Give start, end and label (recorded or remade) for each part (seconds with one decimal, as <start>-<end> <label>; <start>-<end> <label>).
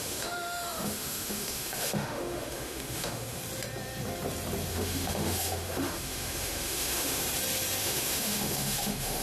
0.0-3.4 remade; 3.4-4.7 recorded; 4.7-7.2 remade; 7.2-7.8 recorded; 7.8-9.2 remade